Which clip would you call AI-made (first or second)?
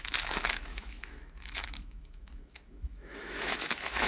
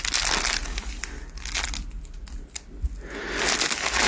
first